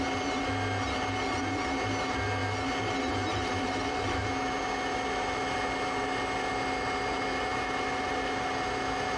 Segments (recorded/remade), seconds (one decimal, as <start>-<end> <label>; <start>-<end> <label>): 0.0-9.2 recorded